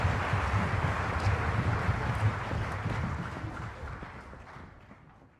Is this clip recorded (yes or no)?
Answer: yes